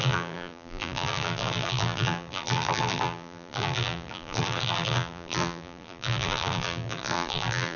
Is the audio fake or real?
fake